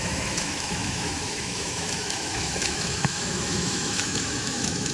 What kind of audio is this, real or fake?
fake